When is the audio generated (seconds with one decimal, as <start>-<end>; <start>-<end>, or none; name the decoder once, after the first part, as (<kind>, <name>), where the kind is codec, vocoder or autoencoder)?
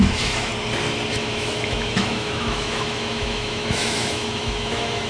0.0-0.5 (autoencoder, DAC-VAE); 1.1-5.1